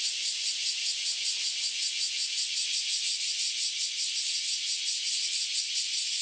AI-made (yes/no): no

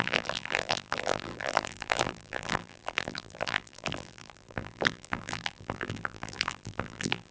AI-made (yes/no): yes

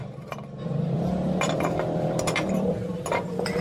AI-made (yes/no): yes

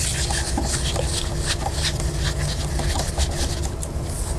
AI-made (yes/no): no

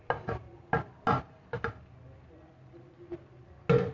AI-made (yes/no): no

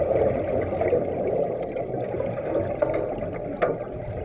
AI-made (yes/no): no